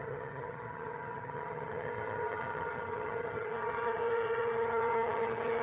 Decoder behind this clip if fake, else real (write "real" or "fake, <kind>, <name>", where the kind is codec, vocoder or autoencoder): fake, vocoder, HiFi-GAN